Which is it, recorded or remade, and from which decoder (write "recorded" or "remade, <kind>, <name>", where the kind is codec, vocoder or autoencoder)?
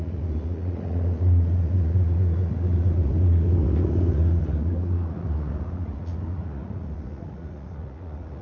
remade, vocoder, Vocos